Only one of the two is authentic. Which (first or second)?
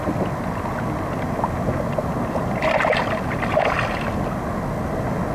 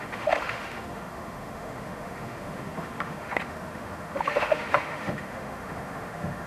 first